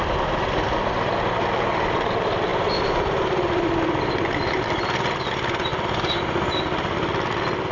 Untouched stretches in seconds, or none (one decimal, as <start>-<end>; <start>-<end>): 0.0-7.7